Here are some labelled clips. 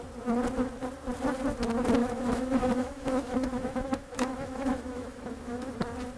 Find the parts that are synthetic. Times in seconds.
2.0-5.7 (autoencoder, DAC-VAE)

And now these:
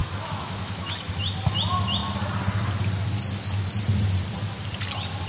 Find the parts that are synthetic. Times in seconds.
0.0-1.1 (autoencoder, DAC-VAE)

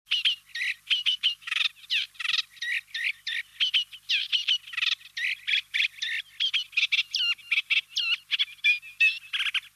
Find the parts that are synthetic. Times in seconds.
1.0-1.6 (autoencoder, DAC-VAE)

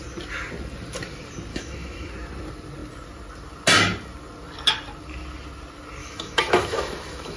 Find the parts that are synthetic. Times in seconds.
1.5-2.1 (autoencoder, DAC-VAE); 6.0-7.4

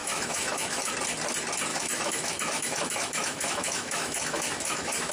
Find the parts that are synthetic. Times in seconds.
0.0-0.9 (autoencoder, DAC-VAE); 1.7-5.1

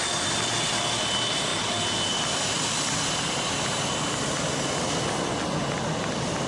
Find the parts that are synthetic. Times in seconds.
none

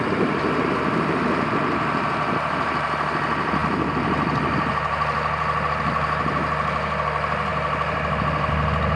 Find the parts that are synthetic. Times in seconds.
none

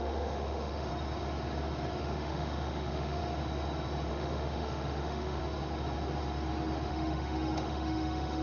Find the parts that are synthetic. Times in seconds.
0.0-0.9 (autoencoder, DAC-VAE); 2.0-3.2; 4.1-5.4; 6.9-8.4